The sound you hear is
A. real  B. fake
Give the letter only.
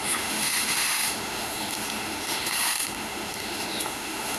B